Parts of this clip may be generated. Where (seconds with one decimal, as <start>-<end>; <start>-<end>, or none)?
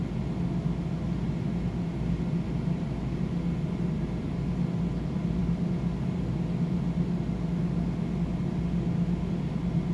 none